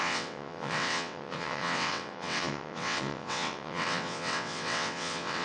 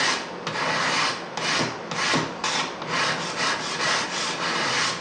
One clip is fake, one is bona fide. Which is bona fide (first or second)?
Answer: second